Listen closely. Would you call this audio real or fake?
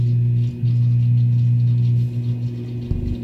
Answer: real